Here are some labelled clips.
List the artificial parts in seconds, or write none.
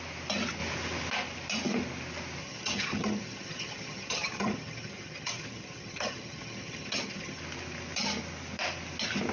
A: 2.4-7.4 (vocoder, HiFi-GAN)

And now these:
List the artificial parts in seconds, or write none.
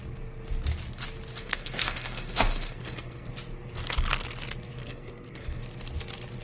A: 1.4-3.3 (codec, SNAC); 4.8-5.6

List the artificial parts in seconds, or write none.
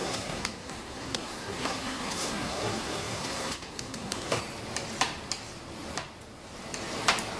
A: 0.0-4.4 (codec, SNAC)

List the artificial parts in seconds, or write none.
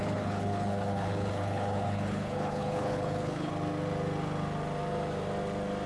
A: 0.0-3.5 (codec, HILCodec)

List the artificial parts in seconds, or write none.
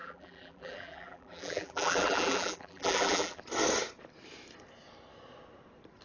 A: 0.0-3.4 (vocoder, BigVGAN v2)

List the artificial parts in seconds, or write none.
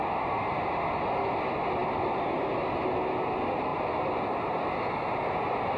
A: 1.8-2.8 (vocoder, BigVGAN v2)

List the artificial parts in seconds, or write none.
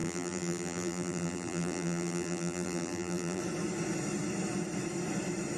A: 0.0-3.4 (vocoder, BigVGAN v2)